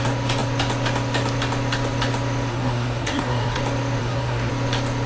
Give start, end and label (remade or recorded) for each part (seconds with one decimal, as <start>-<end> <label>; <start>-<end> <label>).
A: 0.0-2.5 recorded; 2.5-3.6 remade; 3.6-4.0 recorded; 4.0-4.5 remade; 4.5-5.1 recorded